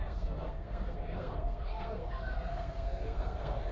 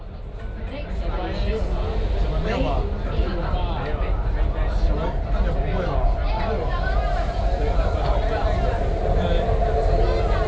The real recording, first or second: second